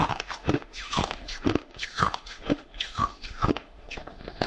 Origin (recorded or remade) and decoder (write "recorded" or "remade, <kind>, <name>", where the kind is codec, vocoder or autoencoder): remade, autoencoder, DAC-VAE